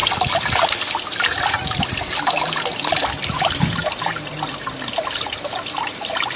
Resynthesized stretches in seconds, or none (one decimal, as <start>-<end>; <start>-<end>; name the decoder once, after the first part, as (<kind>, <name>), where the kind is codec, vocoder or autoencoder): none